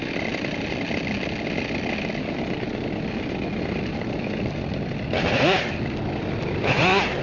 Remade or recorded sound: recorded